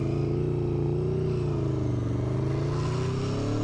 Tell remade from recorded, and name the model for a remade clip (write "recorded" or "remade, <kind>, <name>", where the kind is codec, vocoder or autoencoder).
recorded